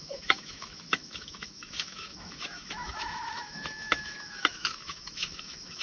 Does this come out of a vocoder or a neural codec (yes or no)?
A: yes